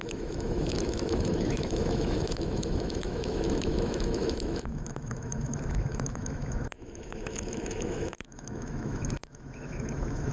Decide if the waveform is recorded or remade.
remade